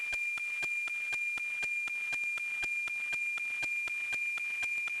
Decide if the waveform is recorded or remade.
recorded